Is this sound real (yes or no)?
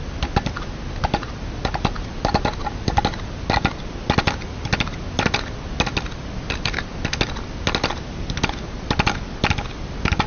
yes